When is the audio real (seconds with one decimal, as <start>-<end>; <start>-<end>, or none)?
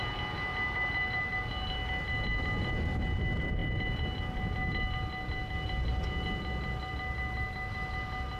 0.0-8.4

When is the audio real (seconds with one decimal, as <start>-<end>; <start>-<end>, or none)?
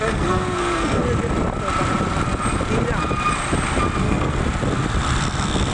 1.0-4.0; 4.4-5.7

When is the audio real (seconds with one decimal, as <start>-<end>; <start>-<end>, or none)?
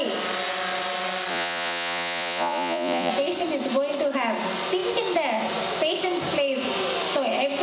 0.0-1.3; 3.1-7.6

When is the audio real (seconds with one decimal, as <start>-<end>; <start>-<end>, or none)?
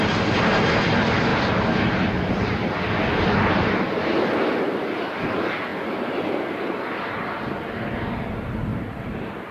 0.0-9.5